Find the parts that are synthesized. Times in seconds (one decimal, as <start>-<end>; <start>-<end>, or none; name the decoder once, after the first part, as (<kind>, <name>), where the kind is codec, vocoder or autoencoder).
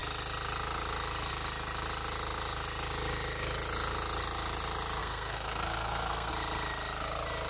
5.0-6.3 (codec, SNAC)